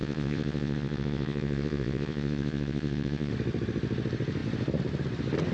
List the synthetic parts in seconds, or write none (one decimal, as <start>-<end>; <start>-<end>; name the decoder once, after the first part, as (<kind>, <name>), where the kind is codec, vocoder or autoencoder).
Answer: 0.0-3.3 (vocoder, Vocos)